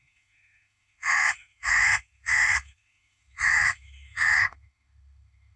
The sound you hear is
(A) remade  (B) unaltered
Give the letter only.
A